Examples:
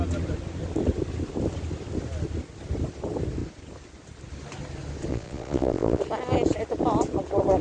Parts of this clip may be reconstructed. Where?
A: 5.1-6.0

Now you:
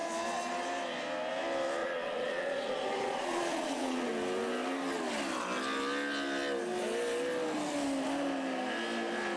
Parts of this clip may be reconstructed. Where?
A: 1.8-4.1

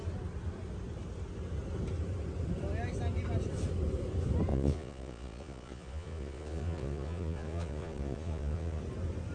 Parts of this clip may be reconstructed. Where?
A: 4.5-8.8

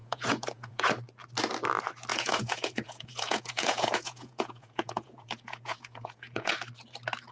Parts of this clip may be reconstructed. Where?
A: 0.0-0.9; 2.1-6.5

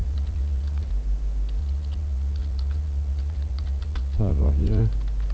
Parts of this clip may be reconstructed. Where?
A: 0.0-0.9; 1.6-4.8

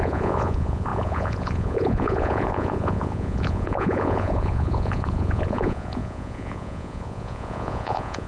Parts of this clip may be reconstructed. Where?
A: 0.0-8.3

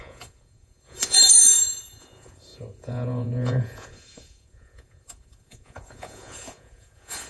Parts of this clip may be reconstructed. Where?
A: 0.0-7.3